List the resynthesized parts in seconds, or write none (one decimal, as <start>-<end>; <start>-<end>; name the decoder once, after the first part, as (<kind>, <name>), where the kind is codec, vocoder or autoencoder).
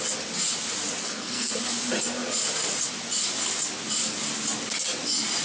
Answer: 1.0-1.5 (codec, SNAC)